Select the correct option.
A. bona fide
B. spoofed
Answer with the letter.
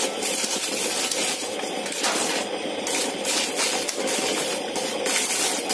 A